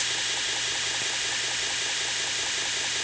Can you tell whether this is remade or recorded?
recorded